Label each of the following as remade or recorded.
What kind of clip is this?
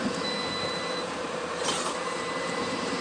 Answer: remade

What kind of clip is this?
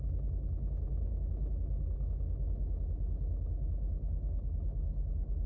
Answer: recorded